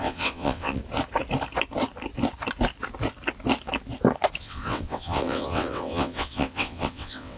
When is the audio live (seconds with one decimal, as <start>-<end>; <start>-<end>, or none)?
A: 0.8-4.4